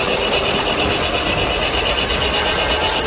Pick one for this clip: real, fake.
real